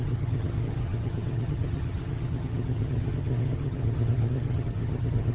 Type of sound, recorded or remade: remade